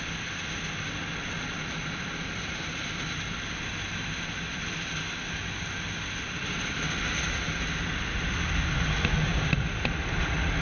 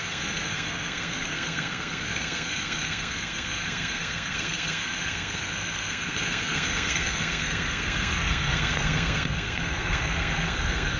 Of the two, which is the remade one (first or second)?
second